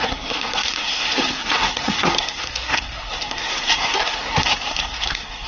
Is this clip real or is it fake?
fake